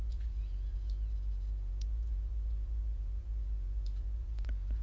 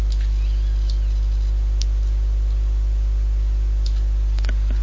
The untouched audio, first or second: second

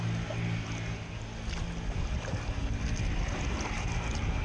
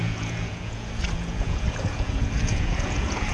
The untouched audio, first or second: first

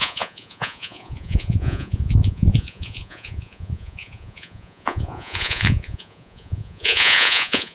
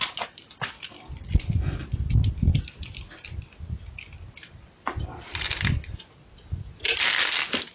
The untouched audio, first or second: second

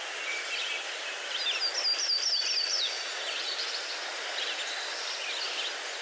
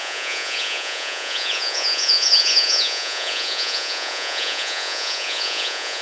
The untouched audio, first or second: first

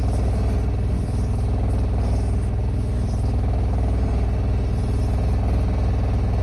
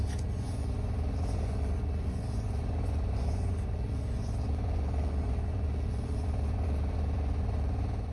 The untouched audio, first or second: first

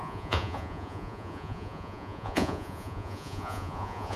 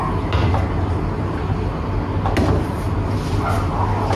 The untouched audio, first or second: second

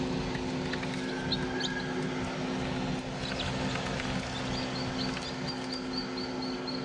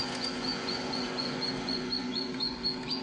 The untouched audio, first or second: first